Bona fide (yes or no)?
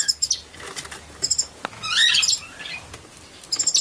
yes